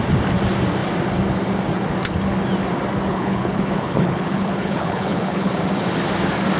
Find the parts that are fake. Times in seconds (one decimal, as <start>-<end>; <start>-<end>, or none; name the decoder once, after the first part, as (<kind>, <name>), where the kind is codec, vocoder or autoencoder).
3.1-5.5 (codec, HILCodec)